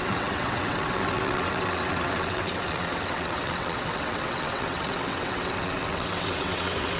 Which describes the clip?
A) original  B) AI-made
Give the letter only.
B